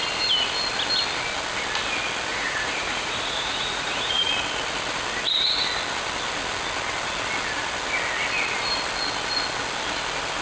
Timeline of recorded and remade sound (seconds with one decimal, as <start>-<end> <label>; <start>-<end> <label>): 0.0-2.3 recorded; 2.3-4.3 remade; 4.3-10.4 recorded

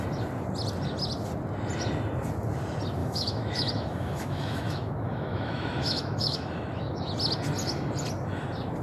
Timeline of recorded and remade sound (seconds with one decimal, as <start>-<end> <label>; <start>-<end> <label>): 0.0-3.0 recorded; 3.0-7.1 remade; 7.1-8.8 recorded

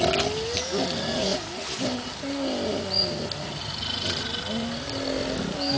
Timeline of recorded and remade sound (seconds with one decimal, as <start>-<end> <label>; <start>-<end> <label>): 0.0-5.8 recorded

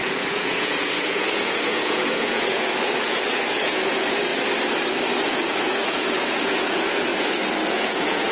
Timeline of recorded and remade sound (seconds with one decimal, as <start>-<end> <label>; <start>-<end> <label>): 0.0-4.3 remade; 4.3-5.3 recorded; 5.3-7.1 remade; 7.1-7.7 recorded; 7.7-8.3 remade